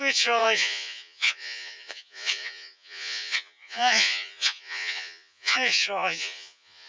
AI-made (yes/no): yes